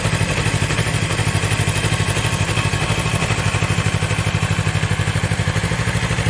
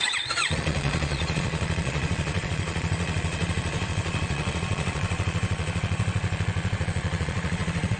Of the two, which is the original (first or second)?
first